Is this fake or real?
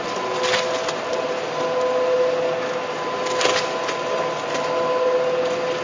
real